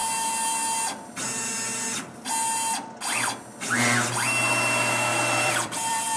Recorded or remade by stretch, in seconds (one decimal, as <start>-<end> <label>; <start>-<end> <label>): 0.0-5.1 recorded; 5.1-6.2 remade